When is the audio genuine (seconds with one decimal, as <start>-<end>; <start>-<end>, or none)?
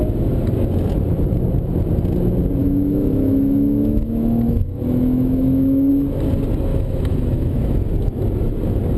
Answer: 0.0-2.6; 5.9-6.7; 7.6-9.0